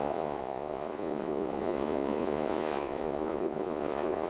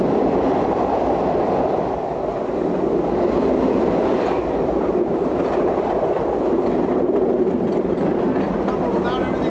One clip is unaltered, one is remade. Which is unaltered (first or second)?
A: second